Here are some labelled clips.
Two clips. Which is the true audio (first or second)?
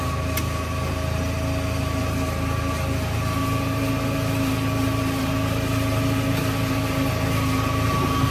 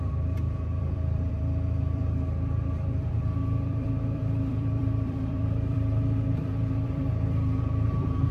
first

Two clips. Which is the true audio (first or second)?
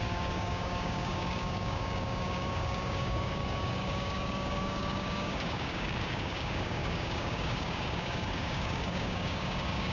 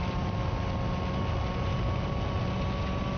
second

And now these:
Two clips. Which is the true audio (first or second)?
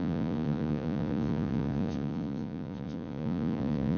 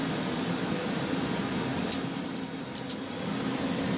second